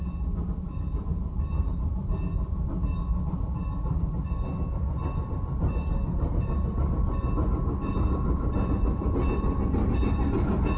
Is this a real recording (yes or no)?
yes